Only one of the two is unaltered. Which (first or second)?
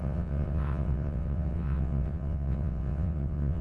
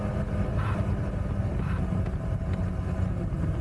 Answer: second